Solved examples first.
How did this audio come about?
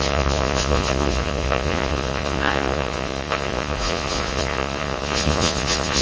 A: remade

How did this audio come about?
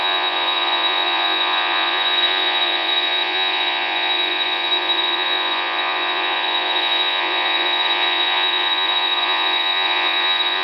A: remade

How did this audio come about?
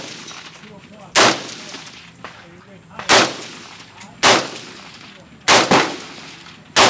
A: recorded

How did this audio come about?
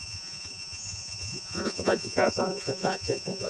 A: remade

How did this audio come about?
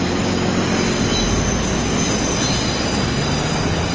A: recorded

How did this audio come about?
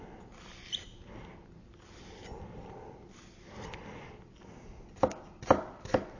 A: recorded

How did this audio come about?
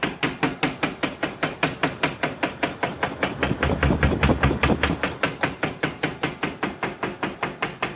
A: recorded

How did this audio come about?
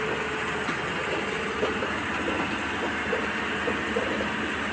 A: recorded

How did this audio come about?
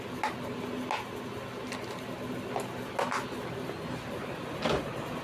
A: recorded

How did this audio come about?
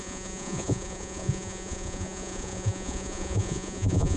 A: remade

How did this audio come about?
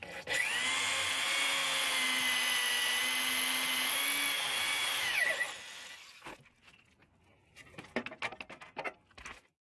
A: recorded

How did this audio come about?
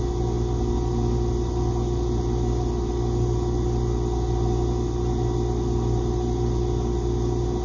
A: recorded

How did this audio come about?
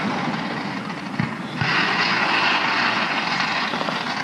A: remade